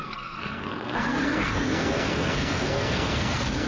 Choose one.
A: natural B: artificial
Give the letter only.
B